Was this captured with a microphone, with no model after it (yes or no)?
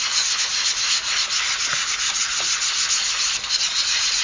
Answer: yes